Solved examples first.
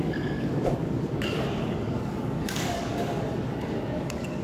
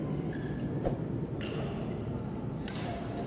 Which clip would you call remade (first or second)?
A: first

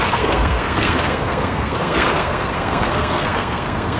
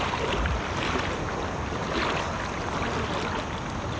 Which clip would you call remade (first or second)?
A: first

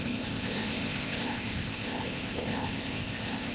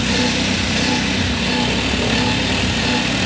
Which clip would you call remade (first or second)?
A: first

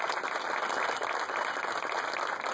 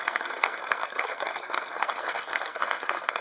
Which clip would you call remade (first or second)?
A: second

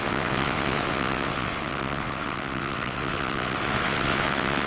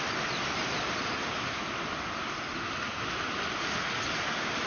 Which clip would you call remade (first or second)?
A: first